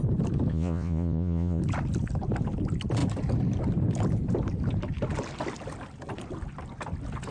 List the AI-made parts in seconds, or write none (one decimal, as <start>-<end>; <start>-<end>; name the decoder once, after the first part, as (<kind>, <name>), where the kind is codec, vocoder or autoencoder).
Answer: 0.5-1.6 (vocoder, Vocos)